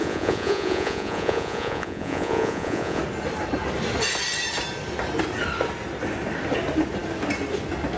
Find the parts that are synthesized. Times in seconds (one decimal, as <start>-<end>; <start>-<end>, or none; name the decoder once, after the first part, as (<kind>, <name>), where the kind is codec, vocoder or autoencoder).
0.0-3.0 (vocoder, Vocos)